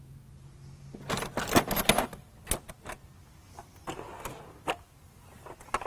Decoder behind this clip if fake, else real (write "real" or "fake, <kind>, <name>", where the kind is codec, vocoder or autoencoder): real